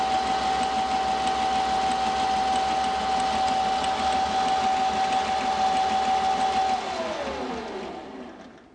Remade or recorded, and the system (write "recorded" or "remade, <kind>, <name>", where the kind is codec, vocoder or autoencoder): recorded